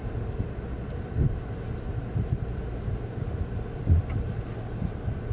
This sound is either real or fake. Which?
real